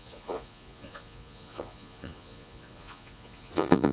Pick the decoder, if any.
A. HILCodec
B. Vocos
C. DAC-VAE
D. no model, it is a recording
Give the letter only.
B